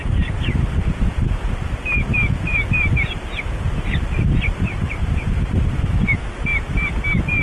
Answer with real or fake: real